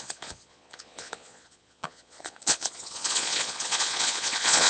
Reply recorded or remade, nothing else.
remade